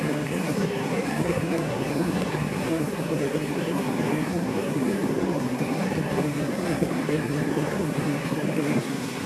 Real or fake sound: fake